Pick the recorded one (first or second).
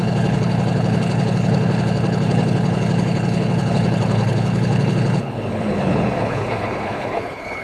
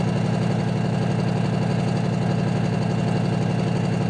second